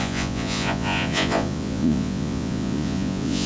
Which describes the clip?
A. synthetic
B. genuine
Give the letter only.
A